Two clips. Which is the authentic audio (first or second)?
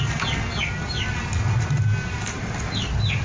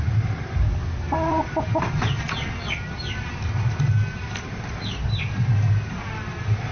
first